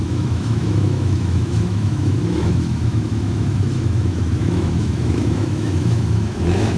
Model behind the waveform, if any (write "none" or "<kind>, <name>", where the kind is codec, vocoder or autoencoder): autoencoder, DAC-VAE